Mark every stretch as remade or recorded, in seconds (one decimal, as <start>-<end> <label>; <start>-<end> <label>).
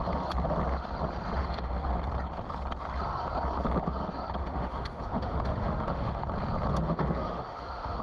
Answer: 0.0-1.4 recorded; 1.4-1.9 remade; 1.9-4.4 recorded; 4.4-6.2 remade; 6.2-6.7 recorded; 6.7-8.0 remade